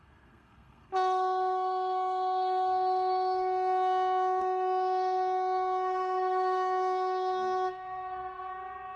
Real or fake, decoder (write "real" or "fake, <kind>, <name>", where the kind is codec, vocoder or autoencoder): fake, codec, SNAC